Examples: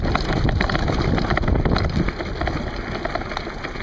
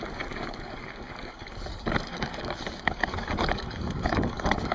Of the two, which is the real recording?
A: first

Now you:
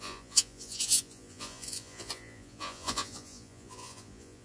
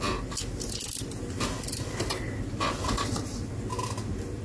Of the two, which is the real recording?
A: second